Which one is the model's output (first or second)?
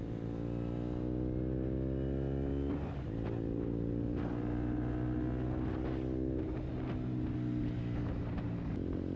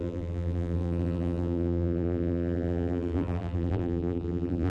second